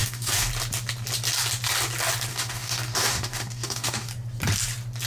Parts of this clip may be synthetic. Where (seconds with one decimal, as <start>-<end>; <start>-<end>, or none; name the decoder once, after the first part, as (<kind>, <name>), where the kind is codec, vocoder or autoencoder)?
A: 0.0-0.5 (codec, DAC); 2.3-4.1